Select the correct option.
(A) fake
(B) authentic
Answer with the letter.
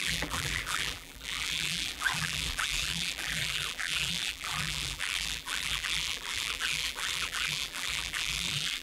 A